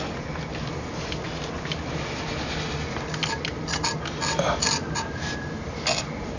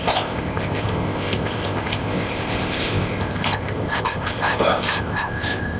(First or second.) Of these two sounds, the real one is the first